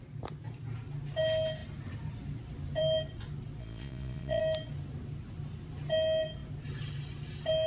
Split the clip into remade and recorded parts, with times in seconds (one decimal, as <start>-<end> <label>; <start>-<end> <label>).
0.0-3.6 recorded; 3.6-4.4 remade; 4.4-7.7 recorded